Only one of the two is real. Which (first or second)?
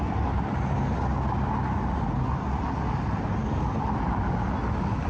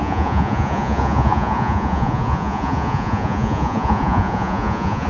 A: first